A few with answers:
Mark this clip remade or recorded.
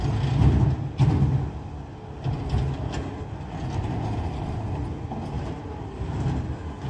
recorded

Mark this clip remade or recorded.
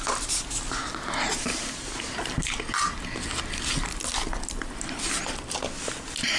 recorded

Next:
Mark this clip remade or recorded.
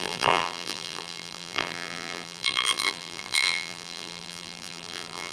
remade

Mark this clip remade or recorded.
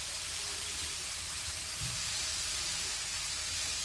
remade